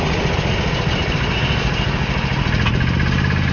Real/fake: real